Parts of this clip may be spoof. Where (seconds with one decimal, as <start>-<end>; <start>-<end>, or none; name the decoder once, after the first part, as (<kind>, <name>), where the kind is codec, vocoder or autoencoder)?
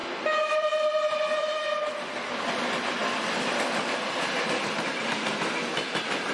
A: 0.0-1.8 (vocoder, BigVGAN v2)